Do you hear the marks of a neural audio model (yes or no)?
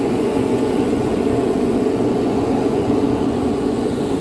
yes